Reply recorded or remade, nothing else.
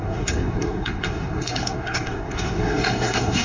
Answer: remade